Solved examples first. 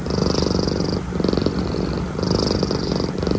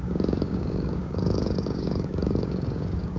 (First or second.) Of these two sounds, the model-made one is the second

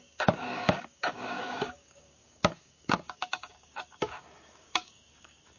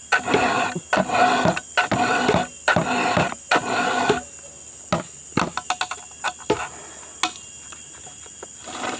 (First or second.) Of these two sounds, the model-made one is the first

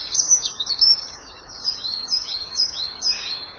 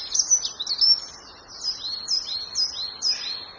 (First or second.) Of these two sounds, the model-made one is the first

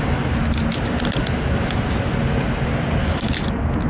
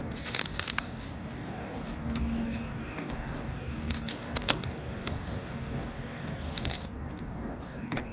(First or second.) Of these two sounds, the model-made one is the second